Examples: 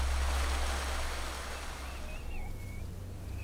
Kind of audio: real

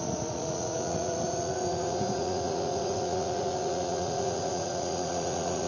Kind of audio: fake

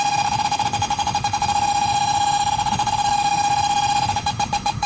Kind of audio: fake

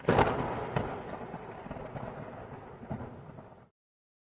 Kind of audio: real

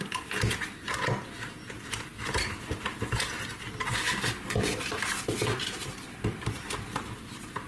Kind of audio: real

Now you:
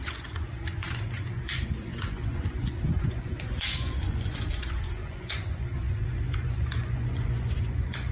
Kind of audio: fake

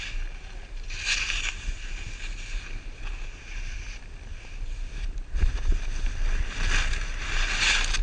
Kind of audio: real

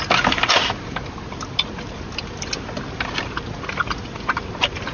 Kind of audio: real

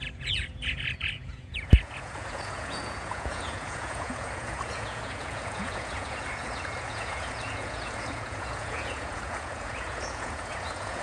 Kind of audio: fake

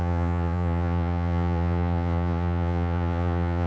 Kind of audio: fake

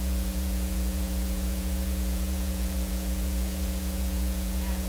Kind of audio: fake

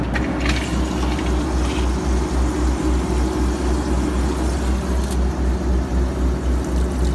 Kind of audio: real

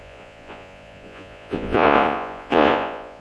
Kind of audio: fake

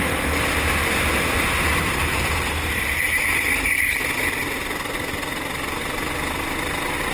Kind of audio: real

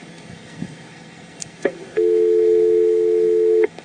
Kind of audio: fake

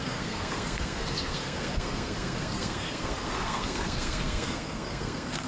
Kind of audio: fake